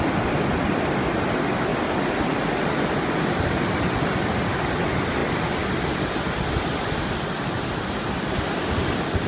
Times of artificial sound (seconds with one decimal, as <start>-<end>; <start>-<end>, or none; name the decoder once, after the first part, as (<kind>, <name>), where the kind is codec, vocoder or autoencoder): none